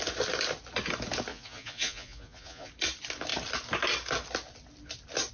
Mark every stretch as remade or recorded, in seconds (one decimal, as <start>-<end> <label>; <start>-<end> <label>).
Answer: 0.0-1.3 recorded; 1.3-2.7 remade; 2.7-5.3 recorded